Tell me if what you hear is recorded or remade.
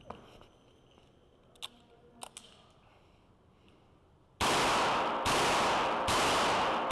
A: recorded